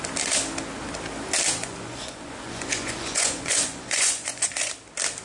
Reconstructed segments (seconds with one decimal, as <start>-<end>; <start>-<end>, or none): 1.6-4.7